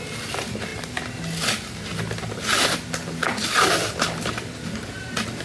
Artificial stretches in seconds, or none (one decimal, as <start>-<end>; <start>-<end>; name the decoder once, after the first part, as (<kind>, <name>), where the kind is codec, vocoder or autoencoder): none